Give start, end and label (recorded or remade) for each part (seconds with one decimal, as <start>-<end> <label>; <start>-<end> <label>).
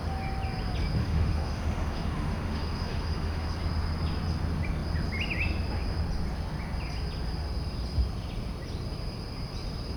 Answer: 0.0-1.0 recorded; 1.0-3.5 remade; 3.5-10.0 recorded